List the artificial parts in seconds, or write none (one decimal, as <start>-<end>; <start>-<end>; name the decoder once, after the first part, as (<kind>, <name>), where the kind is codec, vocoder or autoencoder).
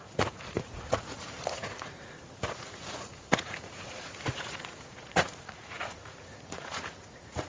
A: 0.0-7.5 (vocoder, Vocos)